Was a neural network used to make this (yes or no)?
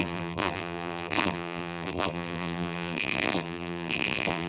yes